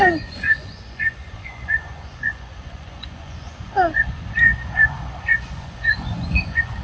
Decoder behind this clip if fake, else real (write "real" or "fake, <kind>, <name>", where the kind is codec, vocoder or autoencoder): fake, vocoder, Vocos